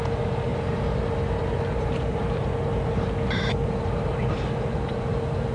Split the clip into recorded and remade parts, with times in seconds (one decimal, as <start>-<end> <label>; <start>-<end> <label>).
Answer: 0.0-5.5 recorded

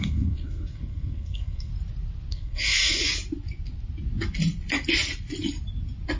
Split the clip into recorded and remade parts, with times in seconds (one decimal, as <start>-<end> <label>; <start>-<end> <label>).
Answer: 0.0-1.7 remade; 1.7-2.3 recorded; 2.3-3.0 remade; 3.0-6.2 recorded

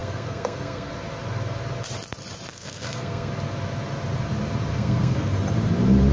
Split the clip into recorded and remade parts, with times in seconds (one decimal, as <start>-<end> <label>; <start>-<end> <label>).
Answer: 0.0-0.9 remade; 0.9-2.5 recorded; 2.5-3.3 remade; 3.3-4.7 recorded; 4.7-5.3 remade; 5.3-6.1 recorded

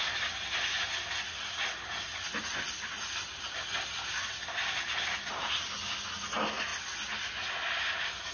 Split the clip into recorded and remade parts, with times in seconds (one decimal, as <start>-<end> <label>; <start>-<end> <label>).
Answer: 0.0-8.3 recorded

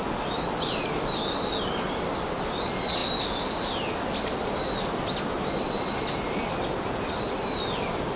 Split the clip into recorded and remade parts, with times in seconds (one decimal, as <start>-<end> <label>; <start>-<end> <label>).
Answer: 0.0-8.2 recorded

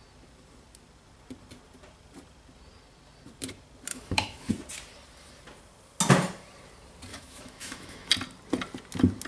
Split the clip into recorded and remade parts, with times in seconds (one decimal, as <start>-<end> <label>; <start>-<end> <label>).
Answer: 0.0-3.9 recorded; 3.9-4.5 remade; 4.5-7.1 recorded; 7.1-8.1 remade; 8.1-9.3 recorded

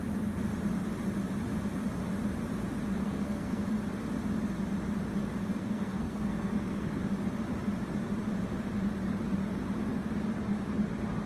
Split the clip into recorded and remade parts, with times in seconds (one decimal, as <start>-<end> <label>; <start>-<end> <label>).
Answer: 0.0-2.9 recorded; 2.9-3.7 remade; 3.7-5.4 recorded; 5.4-7.0 remade; 7.0-11.3 recorded